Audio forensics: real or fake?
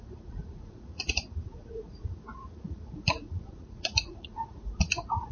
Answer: fake